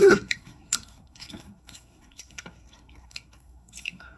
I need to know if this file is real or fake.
fake